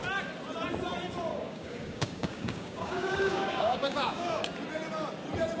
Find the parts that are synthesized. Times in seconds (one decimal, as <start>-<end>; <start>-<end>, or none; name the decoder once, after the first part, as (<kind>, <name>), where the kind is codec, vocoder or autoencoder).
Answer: 1.3-4.5 (codec, DAC)